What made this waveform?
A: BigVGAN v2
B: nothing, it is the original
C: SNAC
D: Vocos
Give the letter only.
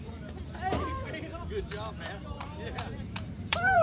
A